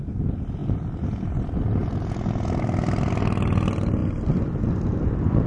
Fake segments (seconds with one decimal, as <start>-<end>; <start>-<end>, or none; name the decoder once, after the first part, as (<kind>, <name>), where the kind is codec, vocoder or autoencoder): 1.8-3.1 (vocoder, BigVGAN v2); 4.0-4.7